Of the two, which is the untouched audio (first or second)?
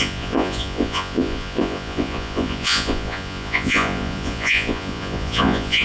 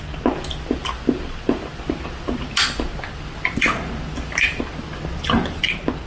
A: second